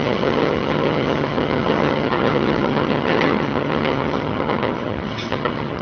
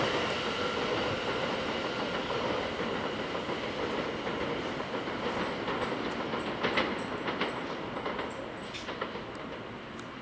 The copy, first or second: first